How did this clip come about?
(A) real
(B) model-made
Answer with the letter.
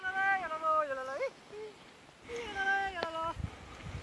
A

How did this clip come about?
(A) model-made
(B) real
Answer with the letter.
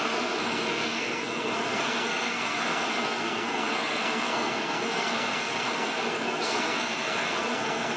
A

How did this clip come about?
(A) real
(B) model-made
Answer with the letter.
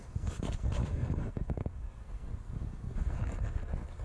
B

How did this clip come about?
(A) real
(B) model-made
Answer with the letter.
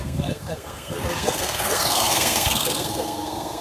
B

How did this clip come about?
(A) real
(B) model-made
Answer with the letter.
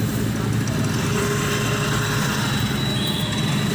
A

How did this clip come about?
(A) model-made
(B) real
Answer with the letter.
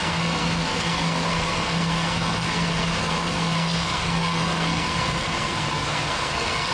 A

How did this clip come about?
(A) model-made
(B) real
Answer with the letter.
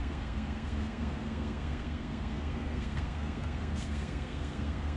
A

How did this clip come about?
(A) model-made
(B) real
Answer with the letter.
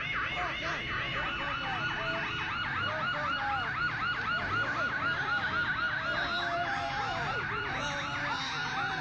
B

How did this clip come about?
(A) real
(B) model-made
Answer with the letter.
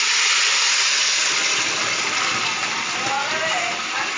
A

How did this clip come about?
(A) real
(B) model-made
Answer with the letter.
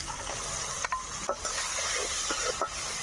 A